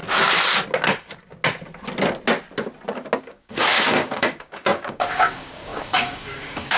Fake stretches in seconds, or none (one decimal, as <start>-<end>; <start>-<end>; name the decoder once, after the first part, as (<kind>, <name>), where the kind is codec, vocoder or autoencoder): 3.2-6.8 (codec, DAC)